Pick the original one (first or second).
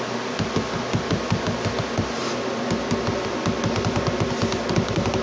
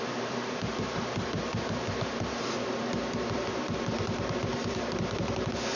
first